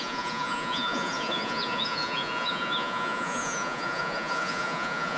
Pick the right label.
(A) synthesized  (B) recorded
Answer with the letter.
A